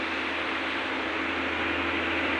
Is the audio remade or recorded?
recorded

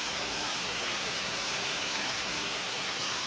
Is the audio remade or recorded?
remade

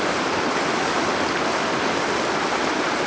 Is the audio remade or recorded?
recorded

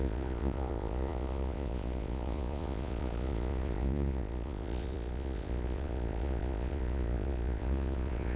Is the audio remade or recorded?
remade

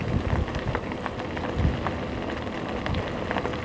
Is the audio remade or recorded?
recorded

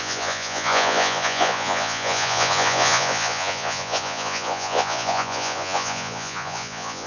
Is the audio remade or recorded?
remade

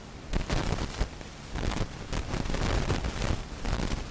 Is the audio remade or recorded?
remade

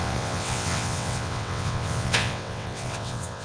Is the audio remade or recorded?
remade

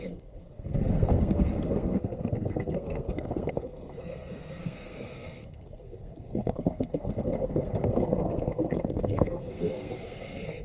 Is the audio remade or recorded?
remade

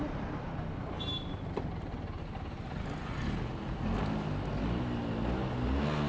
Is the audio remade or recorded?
recorded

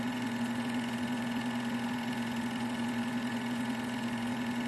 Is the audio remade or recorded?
remade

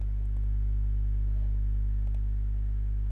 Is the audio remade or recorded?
recorded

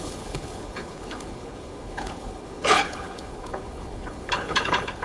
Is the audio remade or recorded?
remade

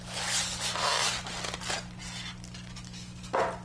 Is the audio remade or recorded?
recorded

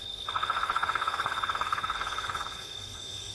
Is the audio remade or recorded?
remade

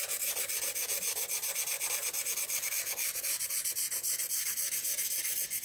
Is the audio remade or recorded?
recorded